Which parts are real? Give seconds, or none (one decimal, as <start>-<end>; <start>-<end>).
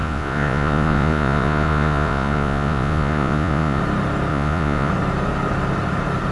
3.8-4.3; 4.9-6.3